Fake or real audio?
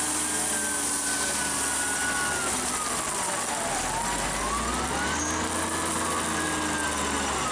real